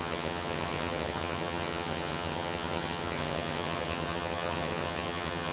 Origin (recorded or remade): remade